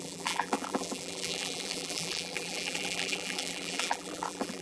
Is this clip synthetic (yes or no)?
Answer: yes